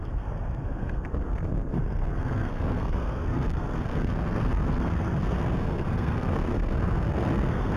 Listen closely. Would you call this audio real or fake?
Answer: fake